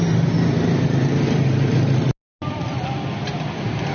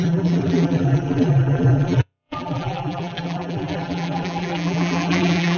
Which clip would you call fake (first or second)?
second